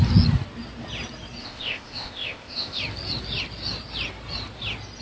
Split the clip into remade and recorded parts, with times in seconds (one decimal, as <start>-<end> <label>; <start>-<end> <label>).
0.0-1.4 recorded; 1.4-2.8 remade; 2.8-5.0 recorded